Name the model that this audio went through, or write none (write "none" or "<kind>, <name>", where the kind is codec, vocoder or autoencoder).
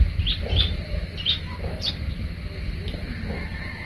none